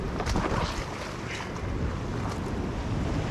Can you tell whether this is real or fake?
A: real